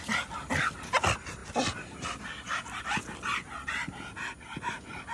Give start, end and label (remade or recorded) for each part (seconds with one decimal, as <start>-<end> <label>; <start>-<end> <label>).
0.0-1.4 recorded; 1.4-2.8 remade; 2.8-5.1 recorded